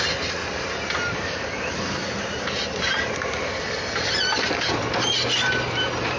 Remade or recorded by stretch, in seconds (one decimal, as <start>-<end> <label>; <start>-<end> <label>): 0.0-0.4 recorded; 0.4-4.1 remade; 4.1-6.2 recorded